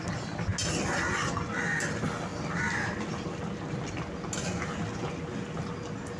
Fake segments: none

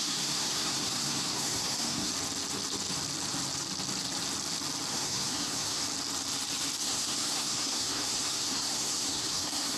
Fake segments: 0.0-2.1 (codec, SNAC); 4.9-5.8; 6.8-9.8